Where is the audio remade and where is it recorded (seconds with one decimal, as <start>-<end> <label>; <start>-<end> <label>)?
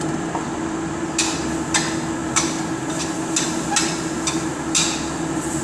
0.0-5.6 recorded